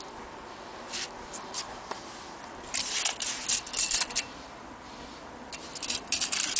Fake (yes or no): no